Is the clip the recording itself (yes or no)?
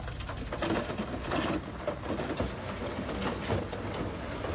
yes